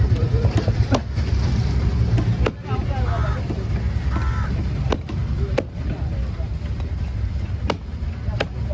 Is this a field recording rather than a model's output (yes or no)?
yes